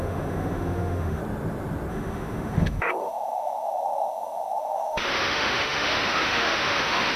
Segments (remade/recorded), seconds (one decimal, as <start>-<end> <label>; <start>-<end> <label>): 0.0-1.2 remade; 1.2-1.9 recorded; 1.9-7.2 remade